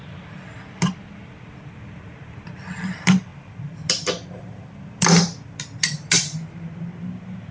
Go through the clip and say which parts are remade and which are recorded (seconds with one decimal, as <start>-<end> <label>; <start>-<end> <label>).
0.0-7.5 recorded